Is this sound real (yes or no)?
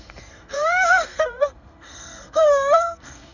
no